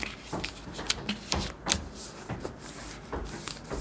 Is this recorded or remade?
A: recorded